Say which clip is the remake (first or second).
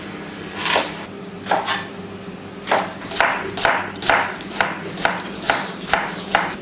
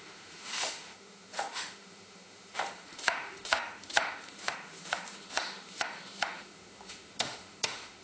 second